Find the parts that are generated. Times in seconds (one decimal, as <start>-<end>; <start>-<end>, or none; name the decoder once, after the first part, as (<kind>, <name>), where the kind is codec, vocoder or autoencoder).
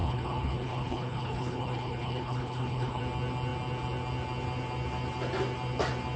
0.0-3.0 (codec, HILCodec)